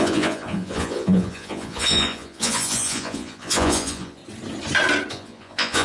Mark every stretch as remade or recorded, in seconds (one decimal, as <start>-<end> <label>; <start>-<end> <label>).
0.0-4.2 remade; 4.2-5.1 recorded; 5.1-5.8 remade